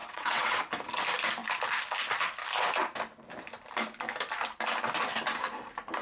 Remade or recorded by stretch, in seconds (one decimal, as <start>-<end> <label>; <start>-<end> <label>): 0.0-0.6 remade; 0.6-6.0 recorded